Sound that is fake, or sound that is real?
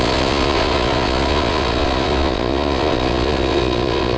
fake